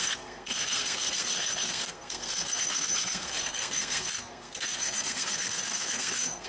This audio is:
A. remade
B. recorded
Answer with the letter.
A